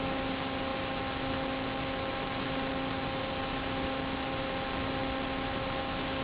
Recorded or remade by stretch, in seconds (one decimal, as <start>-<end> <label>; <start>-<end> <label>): 0.0-6.2 recorded